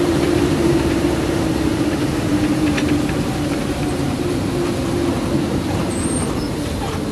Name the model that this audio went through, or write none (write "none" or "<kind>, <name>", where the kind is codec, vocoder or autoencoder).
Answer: vocoder, BigVGAN v2